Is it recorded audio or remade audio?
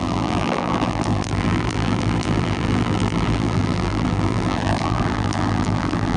remade